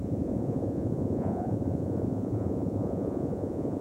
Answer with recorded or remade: remade